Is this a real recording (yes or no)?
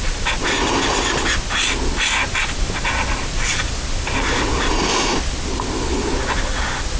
yes